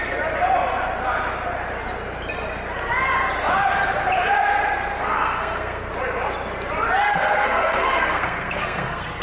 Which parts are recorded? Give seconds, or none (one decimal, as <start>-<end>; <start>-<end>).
0.0-5.0; 5.9-7.1